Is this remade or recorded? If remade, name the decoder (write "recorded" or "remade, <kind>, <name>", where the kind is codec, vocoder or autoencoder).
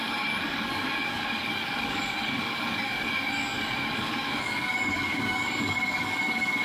remade, codec, DAC